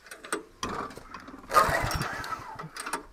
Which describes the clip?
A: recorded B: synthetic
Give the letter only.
A